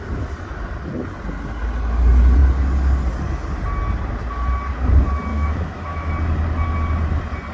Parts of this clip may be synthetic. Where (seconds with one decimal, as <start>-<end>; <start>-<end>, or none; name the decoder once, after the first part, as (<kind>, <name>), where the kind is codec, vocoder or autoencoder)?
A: 5.3-6.1 (autoencoder, DAC-VAE)